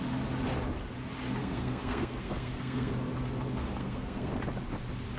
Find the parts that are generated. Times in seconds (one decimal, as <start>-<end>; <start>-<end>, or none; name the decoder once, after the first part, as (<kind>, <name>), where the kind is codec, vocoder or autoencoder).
1.4-2.9 (codec, SNAC); 3.8-4.3

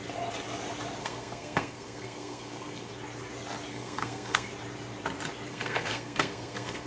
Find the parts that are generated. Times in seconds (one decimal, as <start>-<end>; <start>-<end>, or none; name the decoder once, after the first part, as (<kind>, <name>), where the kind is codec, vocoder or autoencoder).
1.0-2.9 (codec, SNAC); 3.7-4.5; 5.5-6.9